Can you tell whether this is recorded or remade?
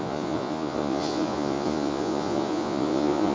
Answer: remade